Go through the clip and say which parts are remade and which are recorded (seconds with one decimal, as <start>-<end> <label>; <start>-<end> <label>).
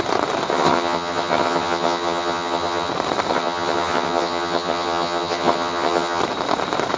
0.0-0.5 recorded; 0.5-2.9 remade; 2.9-3.3 recorded; 3.3-6.2 remade; 6.2-7.0 recorded